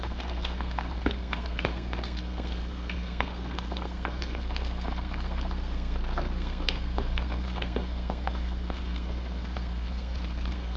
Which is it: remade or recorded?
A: remade